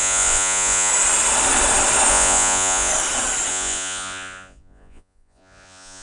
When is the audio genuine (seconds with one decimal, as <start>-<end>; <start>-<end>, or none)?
0.9-2.1; 2.9-3.5